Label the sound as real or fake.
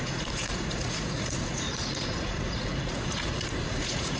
fake